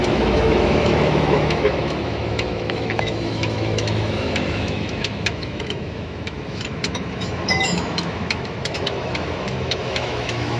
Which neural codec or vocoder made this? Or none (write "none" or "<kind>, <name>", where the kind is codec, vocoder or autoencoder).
autoencoder, DAC-VAE